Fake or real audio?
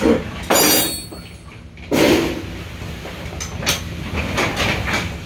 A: real